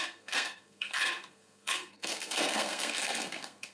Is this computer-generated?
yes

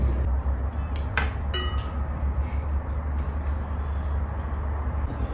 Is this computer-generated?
no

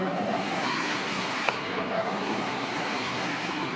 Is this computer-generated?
yes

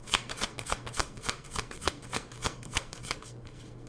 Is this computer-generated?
yes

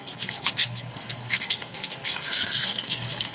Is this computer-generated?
yes